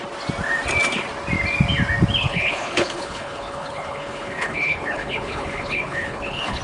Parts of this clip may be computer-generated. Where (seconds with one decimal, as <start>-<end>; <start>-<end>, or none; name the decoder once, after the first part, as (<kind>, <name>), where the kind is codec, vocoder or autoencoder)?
2.2-6.6 (codec, HILCodec)